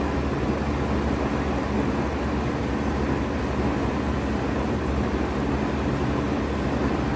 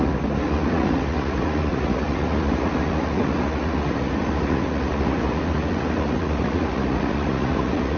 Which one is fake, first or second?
second